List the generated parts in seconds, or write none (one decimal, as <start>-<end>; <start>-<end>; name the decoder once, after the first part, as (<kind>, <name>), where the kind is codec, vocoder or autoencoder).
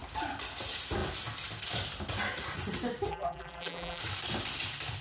3.1-4.0 (vocoder, BigVGAN v2)